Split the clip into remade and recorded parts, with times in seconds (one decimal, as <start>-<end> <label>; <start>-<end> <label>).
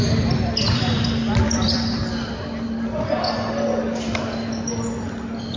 0.0-2.0 remade; 2.0-5.6 recorded